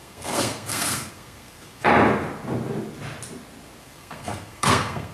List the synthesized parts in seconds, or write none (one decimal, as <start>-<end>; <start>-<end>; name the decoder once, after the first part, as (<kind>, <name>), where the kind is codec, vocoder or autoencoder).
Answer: 0.0-1.9 (codec, SNAC); 3.8-5.1